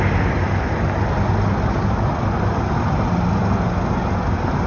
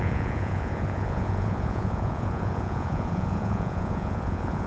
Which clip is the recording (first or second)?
first